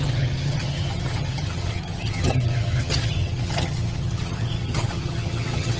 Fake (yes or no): yes